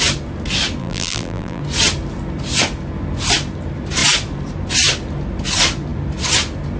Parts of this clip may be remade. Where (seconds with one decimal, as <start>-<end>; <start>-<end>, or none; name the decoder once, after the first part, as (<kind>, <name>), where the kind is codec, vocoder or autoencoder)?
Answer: 0.8-1.6 (vocoder, BigVGAN v2)